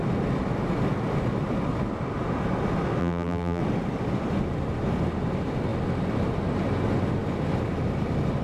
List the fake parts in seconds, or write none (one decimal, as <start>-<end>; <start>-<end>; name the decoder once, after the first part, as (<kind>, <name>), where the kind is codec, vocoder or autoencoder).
3.0-3.6 (vocoder, BigVGAN v2)